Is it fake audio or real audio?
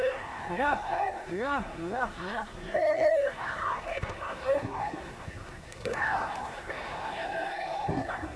fake